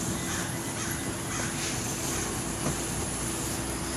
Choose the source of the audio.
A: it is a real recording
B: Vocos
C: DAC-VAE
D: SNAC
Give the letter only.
A